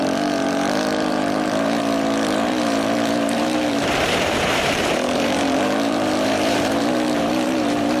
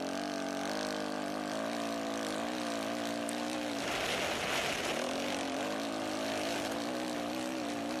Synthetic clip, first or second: first